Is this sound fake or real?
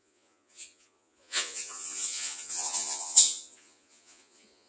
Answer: fake